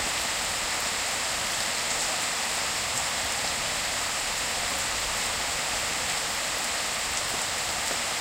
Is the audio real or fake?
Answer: real